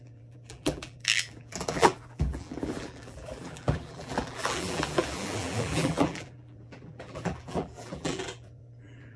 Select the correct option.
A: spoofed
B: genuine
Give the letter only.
A